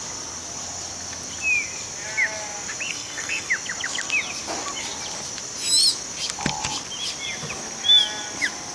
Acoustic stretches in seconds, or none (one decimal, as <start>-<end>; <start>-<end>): 0.0-2.9; 3.5-8.7